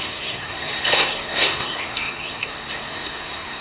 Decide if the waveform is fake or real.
fake